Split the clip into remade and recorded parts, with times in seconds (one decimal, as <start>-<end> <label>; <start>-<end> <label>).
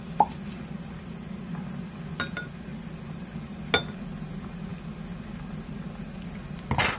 0.0-7.0 recorded